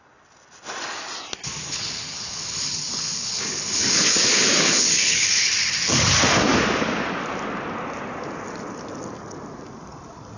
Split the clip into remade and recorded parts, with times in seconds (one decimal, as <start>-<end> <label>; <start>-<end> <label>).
0.0-1.6 recorded; 1.6-5.5 remade; 5.5-10.4 recorded